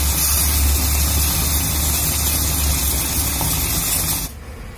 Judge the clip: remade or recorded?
recorded